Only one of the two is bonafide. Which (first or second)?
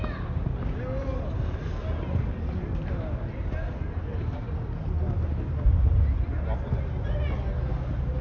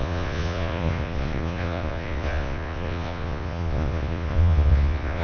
first